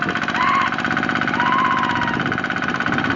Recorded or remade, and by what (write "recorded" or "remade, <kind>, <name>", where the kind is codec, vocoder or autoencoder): recorded